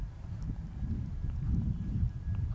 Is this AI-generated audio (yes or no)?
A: yes